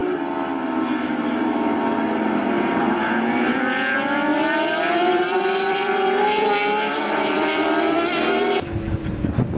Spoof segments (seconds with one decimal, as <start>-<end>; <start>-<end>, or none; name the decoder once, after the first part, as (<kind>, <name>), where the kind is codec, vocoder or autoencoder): 2.4-9.6 (vocoder, BigVGAN v2)